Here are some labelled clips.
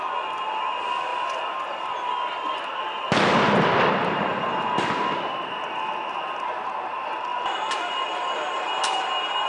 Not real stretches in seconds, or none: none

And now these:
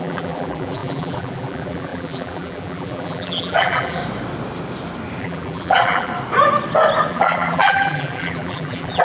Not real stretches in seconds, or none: 0.0-4.0 (vocoder, BigVGAN v2); 5.2-6.1; 7.1-9.0

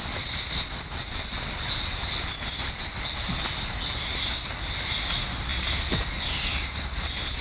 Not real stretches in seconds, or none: none

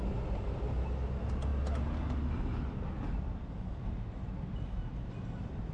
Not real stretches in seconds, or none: none